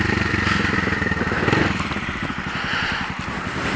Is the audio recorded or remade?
recorded